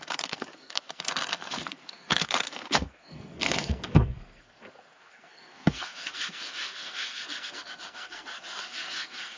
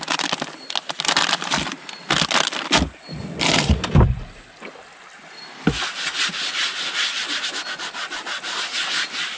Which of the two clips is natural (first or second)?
second